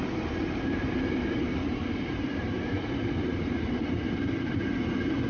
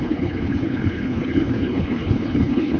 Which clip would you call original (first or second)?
first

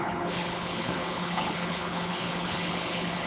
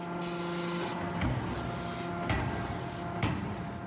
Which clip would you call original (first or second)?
second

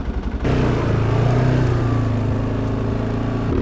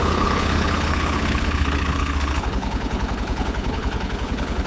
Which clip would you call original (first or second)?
first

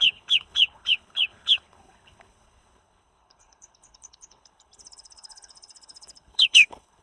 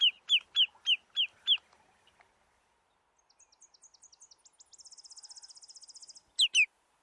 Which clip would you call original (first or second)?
second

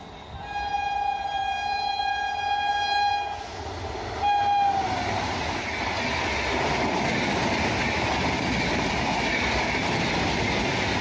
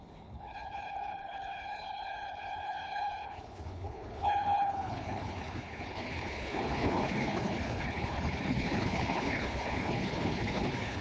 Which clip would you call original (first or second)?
first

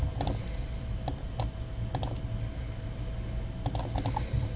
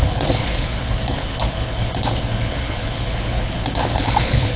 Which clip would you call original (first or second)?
first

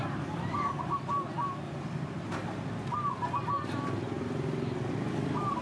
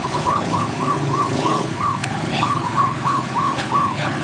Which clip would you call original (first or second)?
first